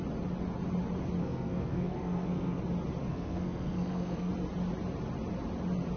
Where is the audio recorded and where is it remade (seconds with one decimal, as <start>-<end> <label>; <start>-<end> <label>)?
0.0-1.2 recorded; 1.2-2.6 remade; 2.6-3.1 recorded; 3.1-4.3 remade; 4.3-6.0 recorded